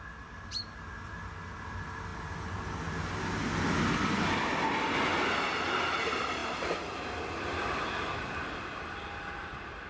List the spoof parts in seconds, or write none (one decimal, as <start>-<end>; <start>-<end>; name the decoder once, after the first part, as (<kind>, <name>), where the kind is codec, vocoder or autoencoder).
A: none